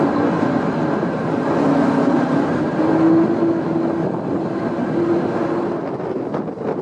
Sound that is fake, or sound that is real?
real